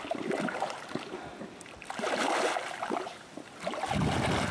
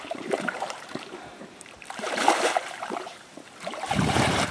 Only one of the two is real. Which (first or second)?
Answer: first